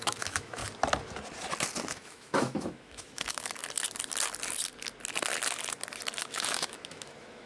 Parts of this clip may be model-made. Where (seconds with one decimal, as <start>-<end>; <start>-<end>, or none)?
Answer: 0.0-0.6; 1.9-3.6; 6.2-7.5